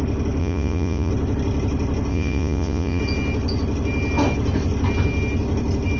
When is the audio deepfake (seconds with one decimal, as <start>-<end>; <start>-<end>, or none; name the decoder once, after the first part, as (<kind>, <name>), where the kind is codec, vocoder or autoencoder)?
0.4-1.1 (vocoder, Vocos); 2.1-3.0